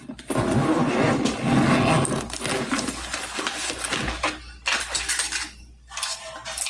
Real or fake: real